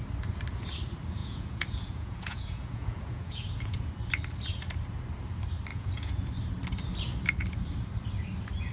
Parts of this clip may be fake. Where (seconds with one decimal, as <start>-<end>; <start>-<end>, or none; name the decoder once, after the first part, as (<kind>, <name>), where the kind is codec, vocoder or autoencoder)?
1.2-3.9 (vocoder, Vocos); 5.7-6.3